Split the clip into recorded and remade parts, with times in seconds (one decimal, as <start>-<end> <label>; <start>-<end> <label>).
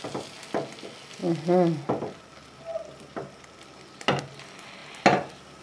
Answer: 0.0-5.6 recorded